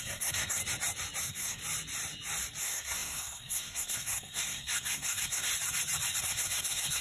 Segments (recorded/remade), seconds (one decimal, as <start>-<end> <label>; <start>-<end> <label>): 0.0-0.6 remade; 0.6-1.2 recorded; 1.2-1.6 remade; 1.6-2.6 recorded; 2.6-5.5 remade; 5.5-6.2 recorded; 6.2-7.0 remade

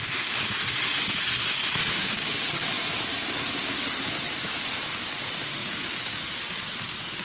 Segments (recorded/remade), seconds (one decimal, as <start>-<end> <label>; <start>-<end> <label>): 0.0-1.8 recorded; 1.8-2.5 remade; 2.5-5.6 recorded; 5.6-6.2 remade; 6.2-7.2 recorded

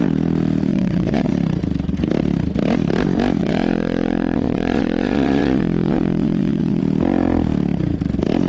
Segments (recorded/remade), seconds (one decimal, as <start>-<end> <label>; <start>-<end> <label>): 0.0-0.7 recorded; 0.7-1.3 remade; 1.3-3.4 recorded; 3.4-6.8 remade; 6.8-8.5 recorded

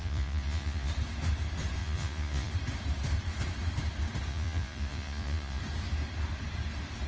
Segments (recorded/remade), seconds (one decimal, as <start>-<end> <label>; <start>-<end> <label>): 0.0-0.9 remade; 0.9-1.8 recorded; 1.8-2.5 remade; 2.5-4.3 recorded; 4.3-5.6 remade; 5.6-7.1 recorded

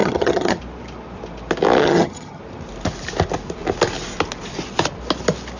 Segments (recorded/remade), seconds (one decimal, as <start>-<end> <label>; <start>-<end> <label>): 0.0-0.6 remade; 0.6-1.8 recorded; 1.8-2.4 remade; 2.4-5.6 recorded

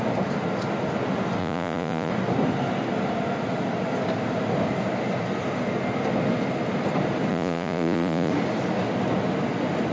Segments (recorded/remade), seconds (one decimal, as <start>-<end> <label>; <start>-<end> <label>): 0.0-1.4 recorded; 1.4-2.1 remade; 2.1-7.3 recorded; 7.3-8.3 remade; 8.3-9.9 recorded

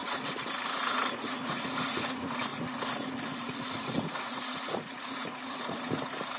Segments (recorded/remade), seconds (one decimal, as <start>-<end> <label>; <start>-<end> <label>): 0.0-6.4 remade

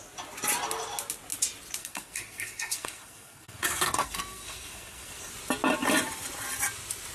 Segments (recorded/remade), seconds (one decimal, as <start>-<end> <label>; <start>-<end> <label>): 0.0-1.8 recorded; 1.8-5.3 remade; 5.3-7.1 recorded